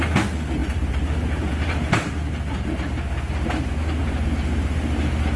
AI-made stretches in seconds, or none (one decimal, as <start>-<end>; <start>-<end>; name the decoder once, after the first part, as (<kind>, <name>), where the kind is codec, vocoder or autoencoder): 0.6-3.8 (vocoder, BigVGAN v2)